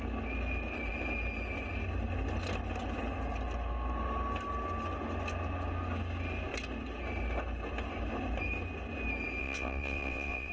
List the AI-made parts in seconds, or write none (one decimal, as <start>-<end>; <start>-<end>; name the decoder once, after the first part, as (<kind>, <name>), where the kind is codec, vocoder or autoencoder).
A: 9.4-10.5 (vocoder, WaveNeXt)